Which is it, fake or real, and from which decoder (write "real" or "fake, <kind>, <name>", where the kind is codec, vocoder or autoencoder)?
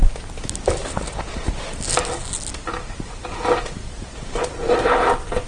real